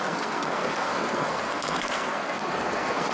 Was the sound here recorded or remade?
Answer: remade